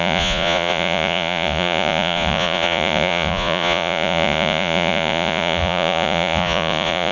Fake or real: fake